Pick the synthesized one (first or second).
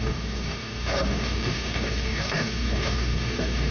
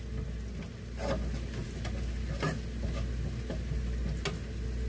first